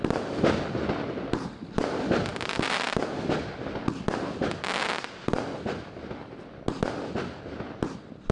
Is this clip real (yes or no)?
yes